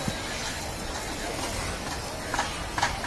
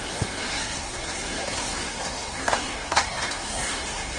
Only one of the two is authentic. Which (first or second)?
first